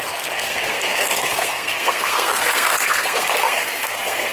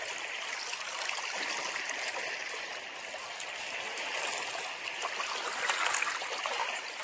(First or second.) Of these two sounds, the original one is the second